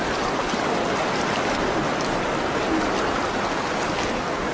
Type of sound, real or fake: real